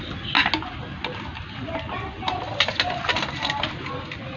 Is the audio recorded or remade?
recorded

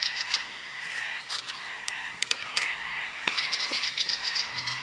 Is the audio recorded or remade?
remade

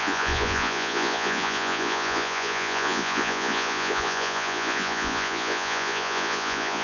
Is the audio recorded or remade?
remade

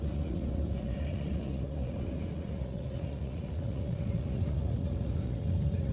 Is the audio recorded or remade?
remade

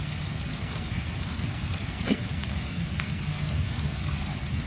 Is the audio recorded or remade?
remade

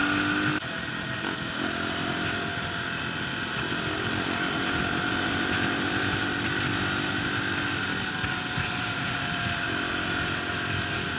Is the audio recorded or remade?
recorded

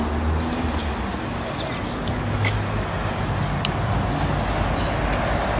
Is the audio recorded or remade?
recorded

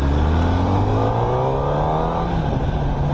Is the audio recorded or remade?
recorded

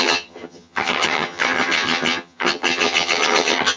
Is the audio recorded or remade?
remade